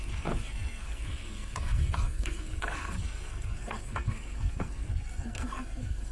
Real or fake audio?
fake